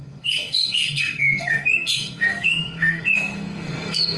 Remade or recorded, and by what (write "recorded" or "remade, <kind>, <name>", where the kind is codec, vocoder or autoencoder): remade, codec, SNAC